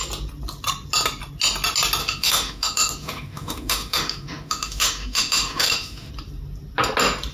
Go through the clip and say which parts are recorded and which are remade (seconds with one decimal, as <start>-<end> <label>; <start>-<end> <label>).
0.0-2.0 recorded; 2.0-6.1 remade; 6.1-7.3 recorded